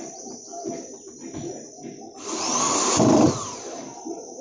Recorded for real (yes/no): no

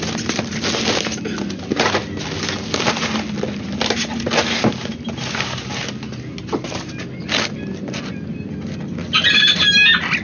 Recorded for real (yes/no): yes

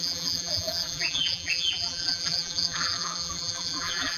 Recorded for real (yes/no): no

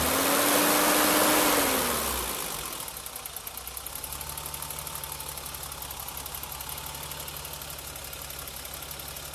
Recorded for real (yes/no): yes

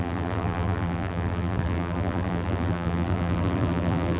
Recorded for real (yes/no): no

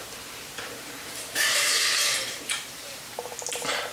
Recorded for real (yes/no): no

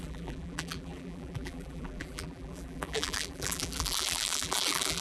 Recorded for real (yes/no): no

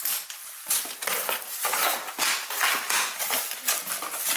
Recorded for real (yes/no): yes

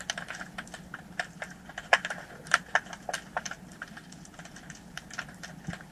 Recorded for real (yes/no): yes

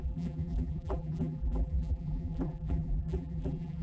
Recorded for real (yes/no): no